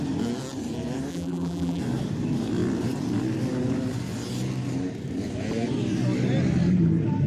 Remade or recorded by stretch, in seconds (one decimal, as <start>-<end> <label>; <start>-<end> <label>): 0.0-1.1 recorded; 1.1-1.8 remade; 1.8-7.3 recorded